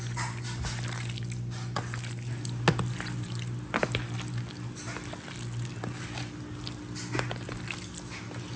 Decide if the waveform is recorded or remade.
recorded